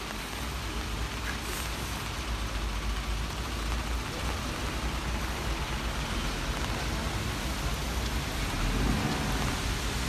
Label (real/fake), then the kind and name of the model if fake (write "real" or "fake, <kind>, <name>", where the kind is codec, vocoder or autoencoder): real